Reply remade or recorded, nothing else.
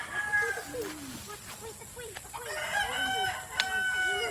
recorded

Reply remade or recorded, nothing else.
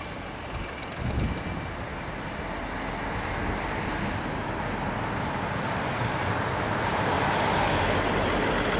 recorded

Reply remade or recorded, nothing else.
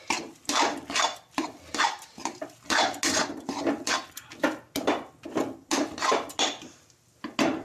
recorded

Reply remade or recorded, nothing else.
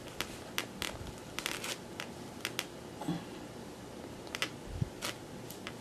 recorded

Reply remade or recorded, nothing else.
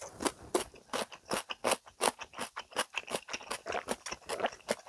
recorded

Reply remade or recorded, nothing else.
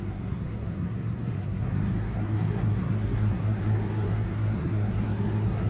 remade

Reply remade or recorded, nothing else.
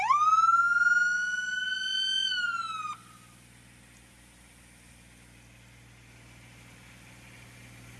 recorded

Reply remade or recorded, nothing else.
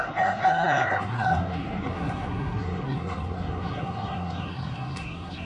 remade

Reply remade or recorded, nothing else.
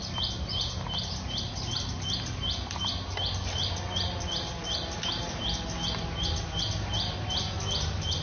recorded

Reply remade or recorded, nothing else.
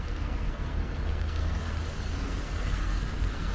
remade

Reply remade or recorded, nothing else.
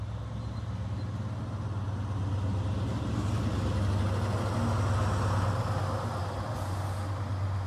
recorded